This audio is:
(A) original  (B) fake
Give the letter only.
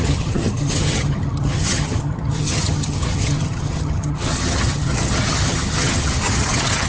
B